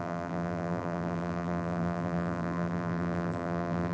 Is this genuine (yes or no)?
no